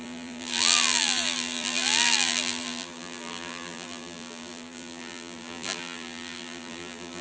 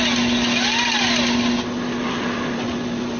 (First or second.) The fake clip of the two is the first